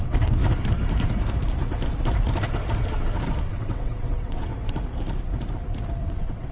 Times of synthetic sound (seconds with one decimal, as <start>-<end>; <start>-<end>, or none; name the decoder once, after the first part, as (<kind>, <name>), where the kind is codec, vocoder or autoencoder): 0.0-0.4 (vocoder, WaveNeXt); 3.5-4.5; 6.1-6.5